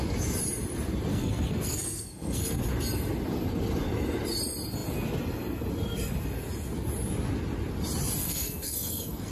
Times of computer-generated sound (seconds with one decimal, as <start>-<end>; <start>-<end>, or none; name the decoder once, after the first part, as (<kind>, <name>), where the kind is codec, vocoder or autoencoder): 1.1-2.6 (codec, SNAC); 8.2-9.3